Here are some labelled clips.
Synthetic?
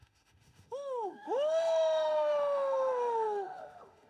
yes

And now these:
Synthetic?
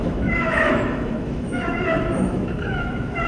yes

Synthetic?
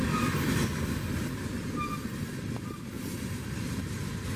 no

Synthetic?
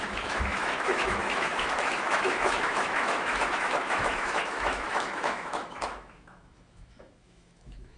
yes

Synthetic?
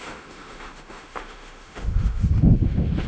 yes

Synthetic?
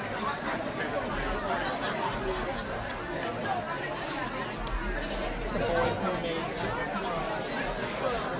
no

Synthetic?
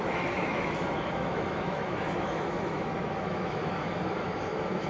yes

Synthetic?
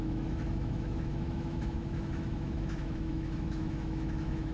yes